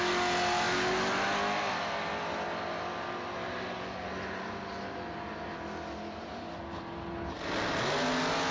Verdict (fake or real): real